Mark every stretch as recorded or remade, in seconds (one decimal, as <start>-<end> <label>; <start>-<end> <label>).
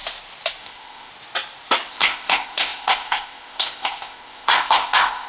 0.0-0.6 recorded; 0.6-1.1 remade; 1.1-1.9 recorded; 1.9-5.3 remade